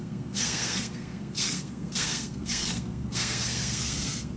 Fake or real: fake